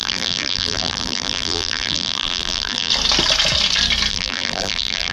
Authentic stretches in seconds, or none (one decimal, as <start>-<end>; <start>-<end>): 2.9-4.1